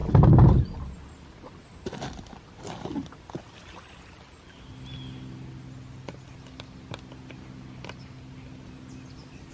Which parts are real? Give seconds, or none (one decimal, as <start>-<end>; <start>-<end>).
0.0-9.5